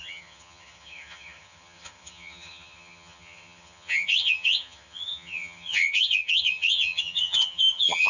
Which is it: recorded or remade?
remade